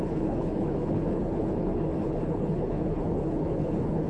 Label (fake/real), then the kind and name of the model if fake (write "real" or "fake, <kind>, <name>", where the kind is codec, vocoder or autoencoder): fake, codec, HILCodec